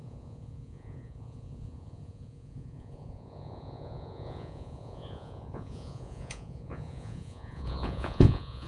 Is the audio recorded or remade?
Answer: remade